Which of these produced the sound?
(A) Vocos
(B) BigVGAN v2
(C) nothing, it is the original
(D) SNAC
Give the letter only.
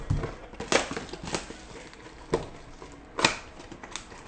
C